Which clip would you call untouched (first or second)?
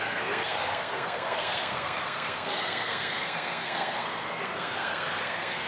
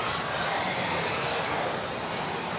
second